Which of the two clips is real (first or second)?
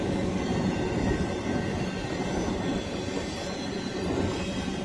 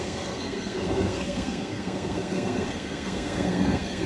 first